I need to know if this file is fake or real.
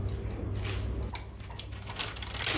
real